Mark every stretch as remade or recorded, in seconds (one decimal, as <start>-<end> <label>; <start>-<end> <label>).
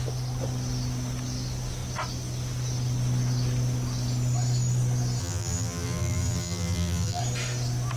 0.0-5.2 recorded; 5.2-7.2 remade; 7.2-8.0 recorded